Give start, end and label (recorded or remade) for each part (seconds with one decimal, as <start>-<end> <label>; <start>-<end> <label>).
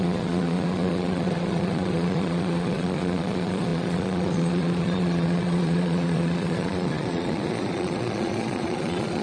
0.0-9.2 remade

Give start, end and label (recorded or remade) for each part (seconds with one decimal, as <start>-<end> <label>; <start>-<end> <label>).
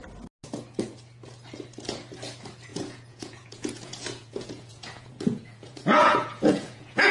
0.0-2.7 recorded; 2.7-7.1 remade